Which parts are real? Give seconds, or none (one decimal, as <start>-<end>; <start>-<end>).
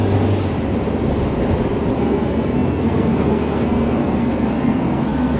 0.0-1.9